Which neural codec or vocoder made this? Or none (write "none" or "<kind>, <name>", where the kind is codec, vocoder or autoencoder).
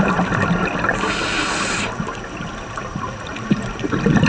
none